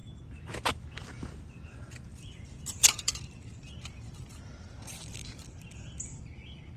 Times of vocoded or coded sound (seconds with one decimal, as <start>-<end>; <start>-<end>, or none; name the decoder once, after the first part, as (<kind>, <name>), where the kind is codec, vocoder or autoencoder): 2.1-6.2 (vocoder, BigVGAN v2)